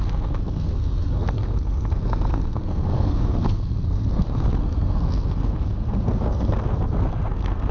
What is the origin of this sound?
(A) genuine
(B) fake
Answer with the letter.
B